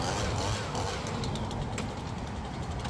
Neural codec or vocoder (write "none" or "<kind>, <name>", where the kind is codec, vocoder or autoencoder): none